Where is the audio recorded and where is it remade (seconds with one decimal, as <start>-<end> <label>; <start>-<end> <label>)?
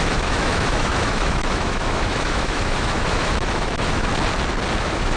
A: 0.0-4.1 remade; 4.1-4.8 recorded; 4.8-5.2 remade